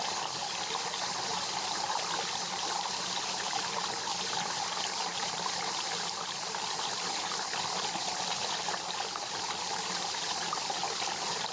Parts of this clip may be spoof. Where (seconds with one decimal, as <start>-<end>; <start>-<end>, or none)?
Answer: none